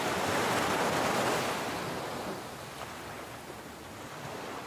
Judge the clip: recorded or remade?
recorded